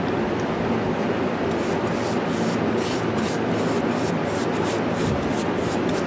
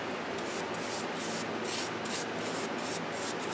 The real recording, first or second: second